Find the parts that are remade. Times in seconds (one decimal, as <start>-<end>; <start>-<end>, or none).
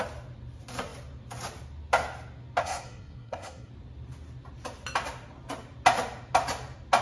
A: 2.6-3.7